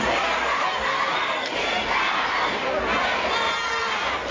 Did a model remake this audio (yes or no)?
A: no